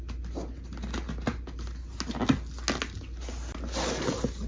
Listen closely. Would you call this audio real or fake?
real